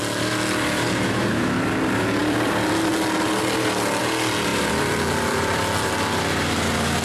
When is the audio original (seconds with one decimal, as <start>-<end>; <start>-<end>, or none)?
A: 0.0-2.2; 2.9-4.5; 5.9-7.0